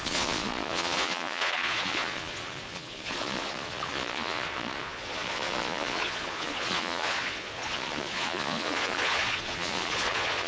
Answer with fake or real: fake